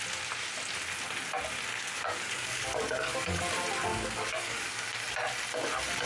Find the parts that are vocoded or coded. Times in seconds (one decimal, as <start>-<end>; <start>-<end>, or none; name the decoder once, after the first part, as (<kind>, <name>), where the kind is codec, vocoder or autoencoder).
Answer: 1.7-3.4 (codec, DAC); 3.9-4.9